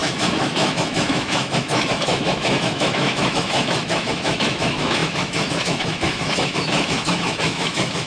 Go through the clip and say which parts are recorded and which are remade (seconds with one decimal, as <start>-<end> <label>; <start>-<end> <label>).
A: 0.0-8.1 remade